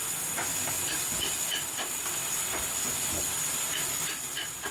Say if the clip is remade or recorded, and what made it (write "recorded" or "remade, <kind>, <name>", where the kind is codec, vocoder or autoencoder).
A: recorded